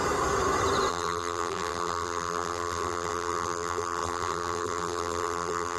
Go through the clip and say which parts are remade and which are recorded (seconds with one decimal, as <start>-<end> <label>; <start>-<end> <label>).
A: 0.0-0.9 recorded; 0.9-5.8 remade